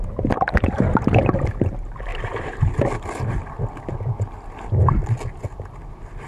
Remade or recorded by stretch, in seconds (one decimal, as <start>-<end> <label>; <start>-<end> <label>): 0.0-2.1 recorded; 2.1-2.6 remade; 2.6-6.3 recorded